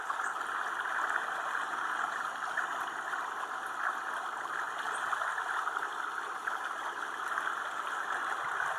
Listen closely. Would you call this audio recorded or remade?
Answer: recorded